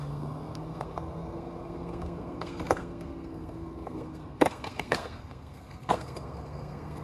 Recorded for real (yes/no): no